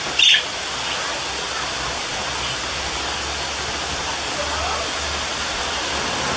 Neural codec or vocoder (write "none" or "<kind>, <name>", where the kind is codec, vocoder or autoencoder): none